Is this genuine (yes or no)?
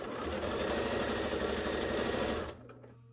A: yes